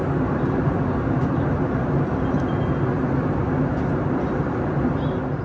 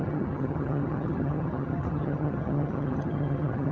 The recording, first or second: first